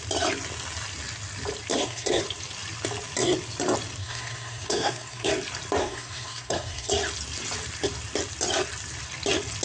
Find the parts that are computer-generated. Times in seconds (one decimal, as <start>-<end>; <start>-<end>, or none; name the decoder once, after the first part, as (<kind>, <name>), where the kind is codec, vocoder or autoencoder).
1.7-2.2 (codec, SNAC); 4.0-5.3; 5.8-6.9

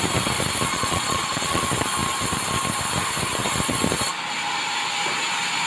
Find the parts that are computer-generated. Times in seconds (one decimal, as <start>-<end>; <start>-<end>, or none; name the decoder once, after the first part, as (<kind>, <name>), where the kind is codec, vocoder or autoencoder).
0.7-1.6 (vocoder, Vocos)

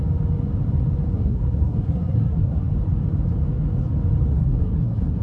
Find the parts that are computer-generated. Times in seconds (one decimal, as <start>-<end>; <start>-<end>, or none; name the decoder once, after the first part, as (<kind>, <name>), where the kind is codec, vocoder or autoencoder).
1.1-2.7 (codec, SNAC); 4.3-5.2

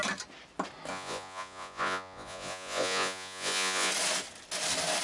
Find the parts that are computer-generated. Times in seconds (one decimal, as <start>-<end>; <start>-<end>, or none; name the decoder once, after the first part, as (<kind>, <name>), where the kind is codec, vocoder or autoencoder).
0.9-3.9 (vocoder, Vocos)